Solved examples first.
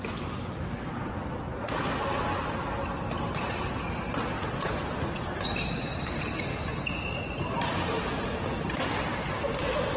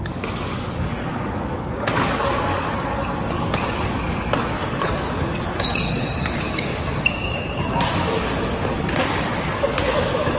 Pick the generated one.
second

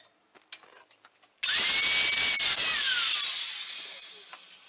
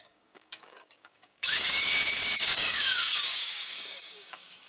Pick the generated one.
second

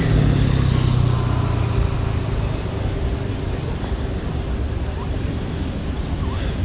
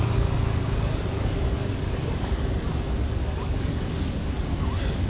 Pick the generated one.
second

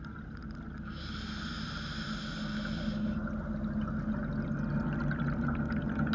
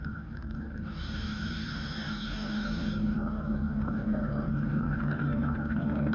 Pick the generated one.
second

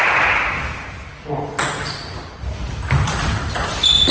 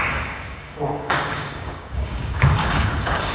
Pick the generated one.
second